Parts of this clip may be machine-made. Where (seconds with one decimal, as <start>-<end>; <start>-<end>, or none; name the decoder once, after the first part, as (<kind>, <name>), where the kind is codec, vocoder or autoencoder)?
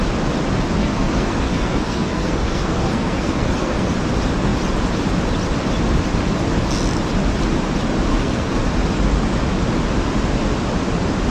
0.8-3.9 (codec, SNAC); 8.1-8.6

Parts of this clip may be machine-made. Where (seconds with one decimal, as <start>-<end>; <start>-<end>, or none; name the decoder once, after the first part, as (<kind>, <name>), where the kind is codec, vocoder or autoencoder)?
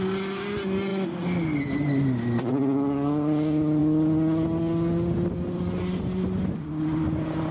none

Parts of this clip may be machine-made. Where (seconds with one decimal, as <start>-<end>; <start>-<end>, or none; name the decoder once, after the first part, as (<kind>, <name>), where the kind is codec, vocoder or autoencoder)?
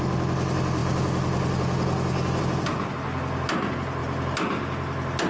none